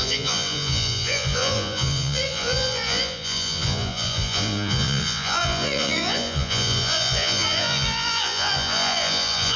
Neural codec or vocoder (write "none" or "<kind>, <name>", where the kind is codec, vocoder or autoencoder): vocoder, Vocos